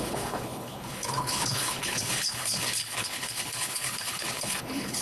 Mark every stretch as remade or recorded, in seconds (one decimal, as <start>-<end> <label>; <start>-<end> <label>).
0.0-5.0 remade